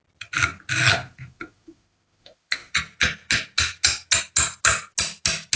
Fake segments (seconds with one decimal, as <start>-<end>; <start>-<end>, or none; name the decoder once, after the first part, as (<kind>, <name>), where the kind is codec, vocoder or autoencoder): 0.9-2.7 (autoencoder, DAC-VAE)